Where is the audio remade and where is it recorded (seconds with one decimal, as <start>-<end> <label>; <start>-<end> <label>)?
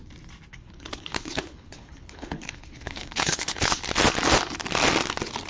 0.0-0.5 recorded; 0.5-3.8 remade; 3.8-5.5 recorded